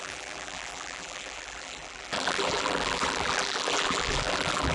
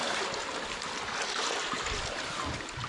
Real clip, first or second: second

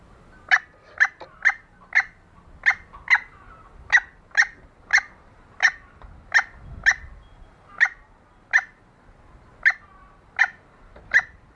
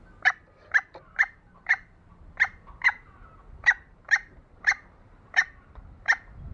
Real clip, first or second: first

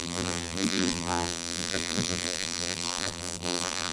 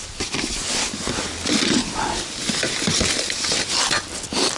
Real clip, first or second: second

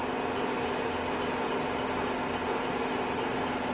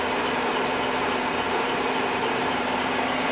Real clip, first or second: first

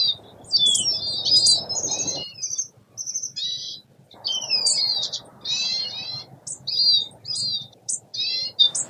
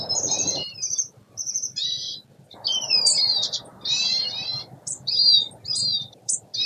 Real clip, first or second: first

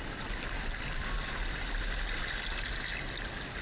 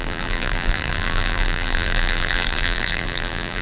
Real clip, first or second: first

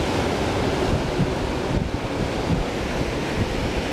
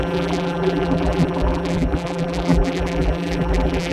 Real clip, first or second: first